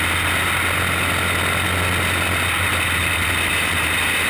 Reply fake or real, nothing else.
real